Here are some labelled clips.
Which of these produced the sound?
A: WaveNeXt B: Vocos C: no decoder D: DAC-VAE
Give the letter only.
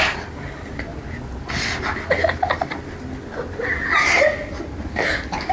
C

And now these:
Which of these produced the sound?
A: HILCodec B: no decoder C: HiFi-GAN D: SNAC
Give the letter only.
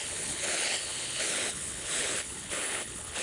A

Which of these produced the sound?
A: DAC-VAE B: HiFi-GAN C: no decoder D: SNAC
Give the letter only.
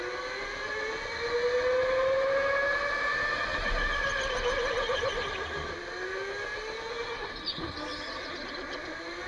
C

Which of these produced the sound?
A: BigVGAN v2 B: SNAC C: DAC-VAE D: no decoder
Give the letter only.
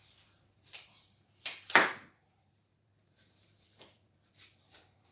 A